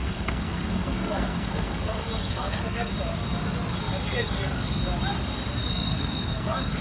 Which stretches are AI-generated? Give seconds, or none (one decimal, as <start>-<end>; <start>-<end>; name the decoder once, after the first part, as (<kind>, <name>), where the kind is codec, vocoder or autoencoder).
0.0-2.9 (codec, SNAC); 4.2-4.8; 5.6-6.8